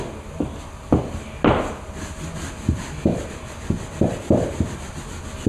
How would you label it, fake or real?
real